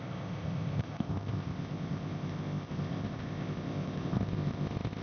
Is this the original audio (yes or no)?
no